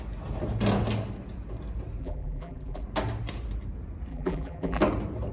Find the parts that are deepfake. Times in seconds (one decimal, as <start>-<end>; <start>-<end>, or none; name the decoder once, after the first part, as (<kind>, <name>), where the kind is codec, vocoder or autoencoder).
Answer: 2.0-2.8 (vocoder, BigVGAN v2); 4.1-4.8